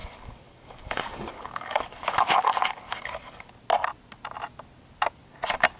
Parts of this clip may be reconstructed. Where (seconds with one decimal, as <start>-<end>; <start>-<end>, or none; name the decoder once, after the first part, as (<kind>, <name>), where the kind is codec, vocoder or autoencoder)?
0.0-3.5 (codec, DAC)